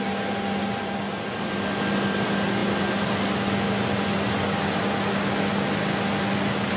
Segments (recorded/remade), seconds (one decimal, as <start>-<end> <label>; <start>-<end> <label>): 0.0-6.8 recorded